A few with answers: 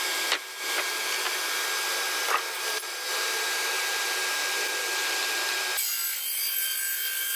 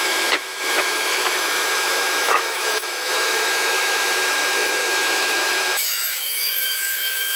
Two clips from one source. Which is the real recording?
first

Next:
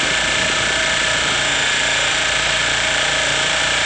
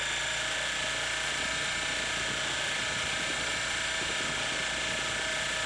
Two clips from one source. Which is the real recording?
second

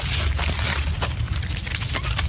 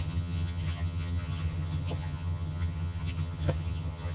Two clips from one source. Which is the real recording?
first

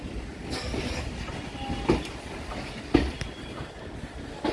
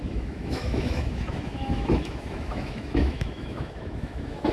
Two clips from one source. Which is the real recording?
first